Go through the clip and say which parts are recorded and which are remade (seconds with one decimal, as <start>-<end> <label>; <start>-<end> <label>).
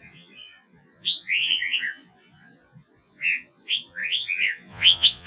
0.0-5.3 remade